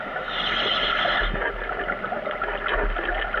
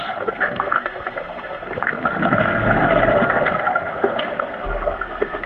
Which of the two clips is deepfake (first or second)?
second